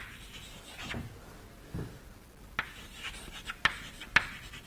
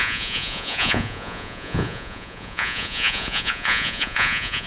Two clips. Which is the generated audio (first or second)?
second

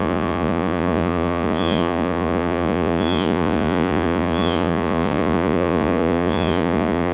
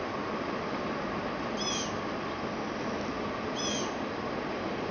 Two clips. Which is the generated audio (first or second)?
first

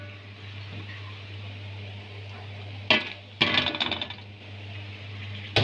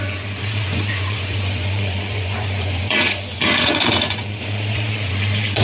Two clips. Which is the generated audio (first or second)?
second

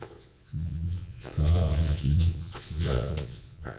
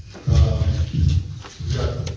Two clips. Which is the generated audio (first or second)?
first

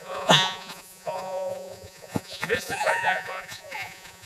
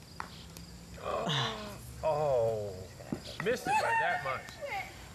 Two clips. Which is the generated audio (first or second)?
first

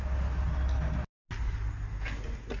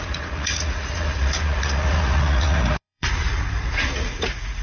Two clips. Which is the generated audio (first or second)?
second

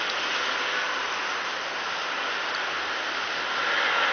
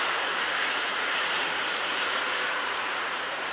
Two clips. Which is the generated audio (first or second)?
second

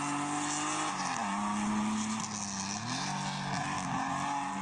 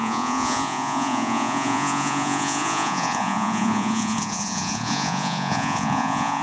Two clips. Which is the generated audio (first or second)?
second